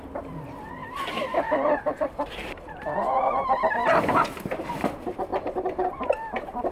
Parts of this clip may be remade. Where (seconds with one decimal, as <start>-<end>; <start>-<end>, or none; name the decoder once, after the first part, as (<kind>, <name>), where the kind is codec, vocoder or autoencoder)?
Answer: 0.0-6.7 (vocoder, BigVGAN v2)

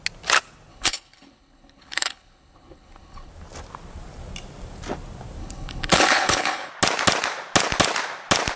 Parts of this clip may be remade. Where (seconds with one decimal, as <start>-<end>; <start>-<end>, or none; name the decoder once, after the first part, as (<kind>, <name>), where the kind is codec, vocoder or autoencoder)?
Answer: 0.7-3.3 (codec, HILCodec); 5.4-6.7